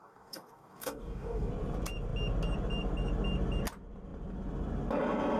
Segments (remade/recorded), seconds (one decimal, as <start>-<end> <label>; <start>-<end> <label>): 0.0-1.5 remade; 1.5-5.4 recorded